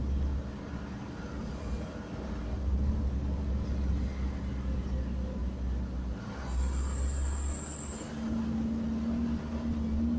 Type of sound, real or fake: real